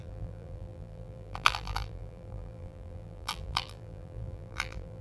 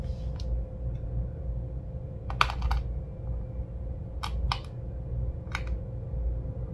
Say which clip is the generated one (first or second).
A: first